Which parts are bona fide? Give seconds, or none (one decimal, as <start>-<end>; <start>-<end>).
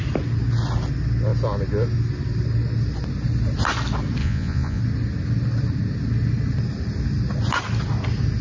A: 0.0-4.2; 4.8-8.4